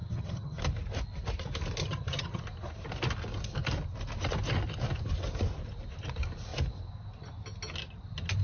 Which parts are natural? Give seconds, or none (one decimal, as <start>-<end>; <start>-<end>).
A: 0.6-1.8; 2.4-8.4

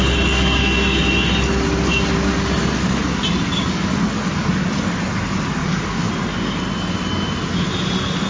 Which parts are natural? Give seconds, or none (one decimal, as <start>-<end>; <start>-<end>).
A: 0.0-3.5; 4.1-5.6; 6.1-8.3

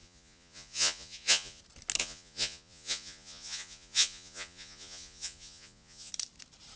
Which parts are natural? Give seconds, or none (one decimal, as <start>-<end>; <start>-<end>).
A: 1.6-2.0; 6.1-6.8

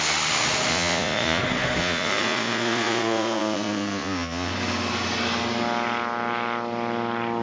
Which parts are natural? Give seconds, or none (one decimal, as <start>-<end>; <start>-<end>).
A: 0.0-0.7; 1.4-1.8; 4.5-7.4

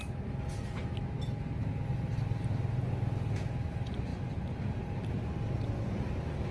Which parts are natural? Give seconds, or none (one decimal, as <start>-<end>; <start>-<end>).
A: 0.0-6.5